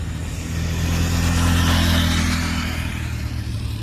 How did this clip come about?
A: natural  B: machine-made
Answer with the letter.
A